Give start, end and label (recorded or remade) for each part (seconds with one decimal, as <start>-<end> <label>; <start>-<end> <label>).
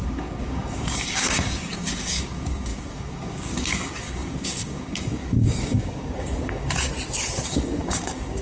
0.0-6.9 remade; 6.9-7.5 recorded; 7.5-8.4 remade